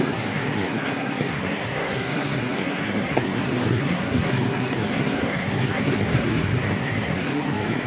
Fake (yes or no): yes